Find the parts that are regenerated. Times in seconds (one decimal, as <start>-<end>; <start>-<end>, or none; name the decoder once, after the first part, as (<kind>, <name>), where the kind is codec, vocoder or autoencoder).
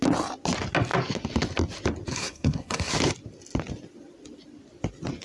2.1-2.9 (codec, SNAC)